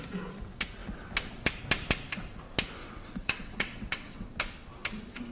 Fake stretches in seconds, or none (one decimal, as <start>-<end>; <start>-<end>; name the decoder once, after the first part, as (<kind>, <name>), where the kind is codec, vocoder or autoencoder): 2.8-4.3 (vocoder, WaveNeXt)